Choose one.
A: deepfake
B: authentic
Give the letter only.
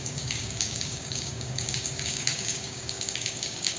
A